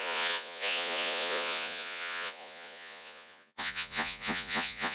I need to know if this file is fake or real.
fake